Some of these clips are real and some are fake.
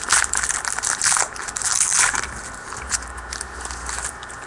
real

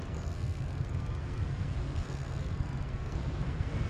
fake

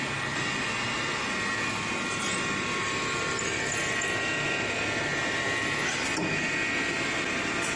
real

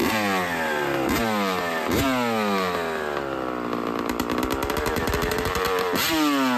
real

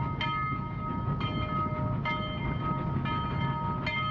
real